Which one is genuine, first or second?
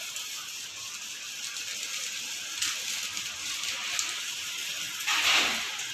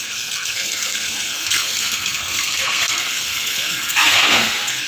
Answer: first